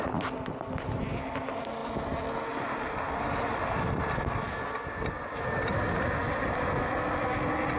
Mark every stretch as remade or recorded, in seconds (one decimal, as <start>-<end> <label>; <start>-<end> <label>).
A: 0.0-7.8 recorded